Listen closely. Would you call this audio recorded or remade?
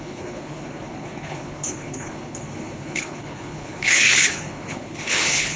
remade